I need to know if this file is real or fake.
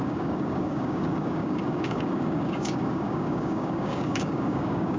fake